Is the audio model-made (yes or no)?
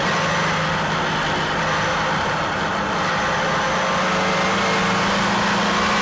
no